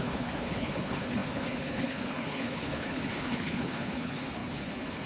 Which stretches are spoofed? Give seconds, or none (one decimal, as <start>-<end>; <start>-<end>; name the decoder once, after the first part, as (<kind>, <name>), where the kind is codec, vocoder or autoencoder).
0.0-5.1 (codec, HILCodec)